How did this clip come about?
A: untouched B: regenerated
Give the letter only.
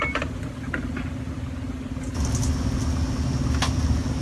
A